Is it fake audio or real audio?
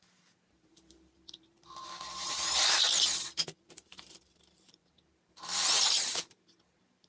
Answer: fake